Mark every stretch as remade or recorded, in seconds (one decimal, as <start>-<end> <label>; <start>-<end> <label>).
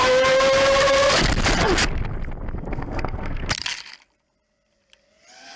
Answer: 0.0-2.7 recorded; 2.7-3.4 remade; 3.4-5.6 recorded